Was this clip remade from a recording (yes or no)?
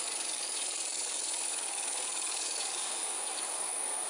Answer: yes